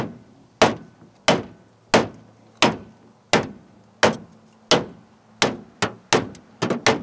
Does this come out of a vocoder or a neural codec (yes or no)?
no